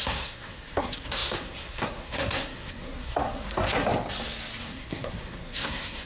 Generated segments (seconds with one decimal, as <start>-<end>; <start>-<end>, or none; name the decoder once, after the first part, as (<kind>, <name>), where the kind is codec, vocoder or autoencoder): 0.0-3.9 (codec, SNAC); 4.6-6.1